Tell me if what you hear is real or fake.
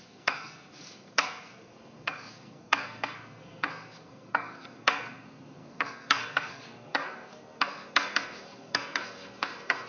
fake